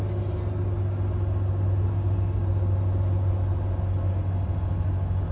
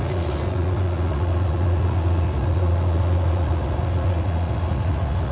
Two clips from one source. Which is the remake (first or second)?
second